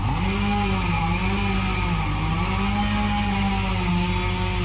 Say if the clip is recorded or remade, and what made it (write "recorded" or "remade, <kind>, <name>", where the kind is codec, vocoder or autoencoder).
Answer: recorded